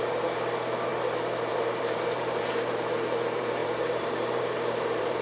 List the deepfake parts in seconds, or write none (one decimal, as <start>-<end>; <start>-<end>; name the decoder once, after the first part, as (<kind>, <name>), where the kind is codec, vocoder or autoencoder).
0.0-0.9 (vocoder, BigVGAN v2); 1.5-5.2